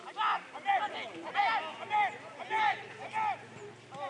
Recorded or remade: recorded